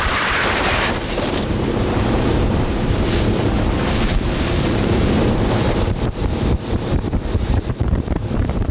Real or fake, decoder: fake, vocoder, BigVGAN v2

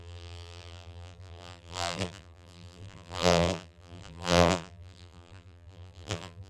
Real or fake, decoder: fake, vocoder, BigVGAN v2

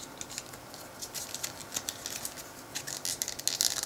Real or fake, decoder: real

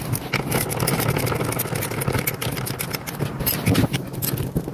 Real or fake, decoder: real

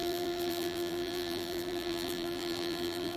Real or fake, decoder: fake, vocoder, BigVGAN v2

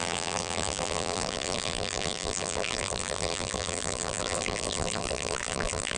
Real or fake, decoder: fake, vocoder, BigVGAN v2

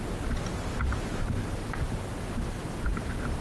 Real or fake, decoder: real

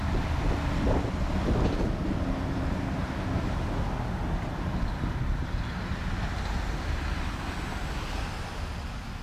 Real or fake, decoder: real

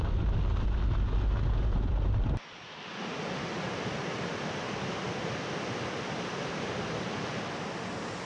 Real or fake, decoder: real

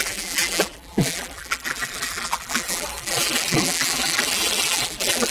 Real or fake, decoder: fake, vocoder, BigVGAN v2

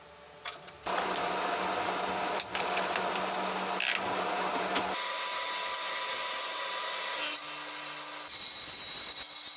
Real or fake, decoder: real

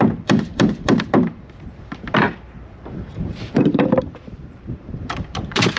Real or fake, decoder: fake, vocoder, BigVGAN v2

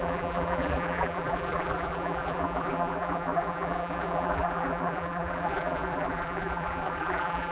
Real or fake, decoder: fake, vocoder, BigVGAN v2